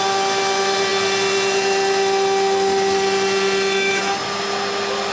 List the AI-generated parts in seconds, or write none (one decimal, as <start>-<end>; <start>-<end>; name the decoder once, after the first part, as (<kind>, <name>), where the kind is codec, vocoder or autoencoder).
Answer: none